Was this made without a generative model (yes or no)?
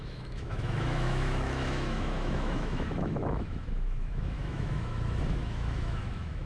no